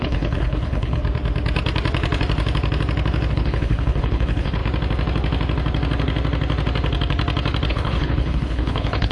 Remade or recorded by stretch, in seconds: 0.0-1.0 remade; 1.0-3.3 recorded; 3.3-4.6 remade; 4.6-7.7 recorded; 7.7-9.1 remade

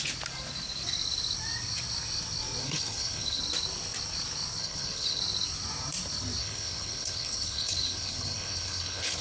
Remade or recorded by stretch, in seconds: 0.0-2.6 recorded; 2.6-3.4 remade; 3.4-4.6 recorded; 4.6-5.2 remade; 5.2-6.4 recorded; 6.4-9.2 remade

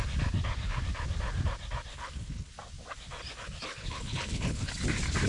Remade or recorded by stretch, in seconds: 0.0-1.9 recorded; 1.9-2.5 remade; 2.5-3.8 recorded; 3.8-4.7 remade; 4.7-5.3 recorded

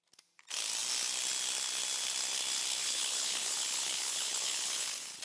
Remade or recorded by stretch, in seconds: 0.0-2.8 recorded; 2.8-5.2 remade

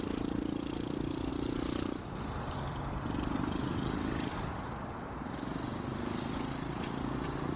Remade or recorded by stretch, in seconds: 0.0-7.6 recorded